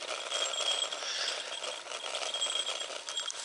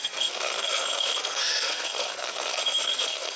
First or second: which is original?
first